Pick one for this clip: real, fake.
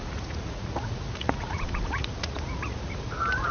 fake